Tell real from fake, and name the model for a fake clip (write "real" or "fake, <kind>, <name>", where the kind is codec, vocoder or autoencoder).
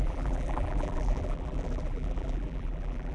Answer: fake, vocoder, BigVGAN v2